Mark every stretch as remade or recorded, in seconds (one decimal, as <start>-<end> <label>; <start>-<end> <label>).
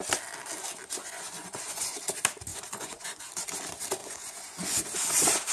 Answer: 0.0-1.0 recorded; 1.0-2.0 remade; 2.0-2.5 recorded; 2.5-3.3 remade; 3.3-4.0 recorded; 4.0-4.8 remade; 4.8-5.5 recorded